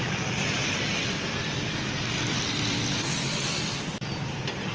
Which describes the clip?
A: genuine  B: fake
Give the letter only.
A